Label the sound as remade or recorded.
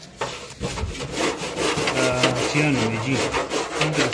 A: recorded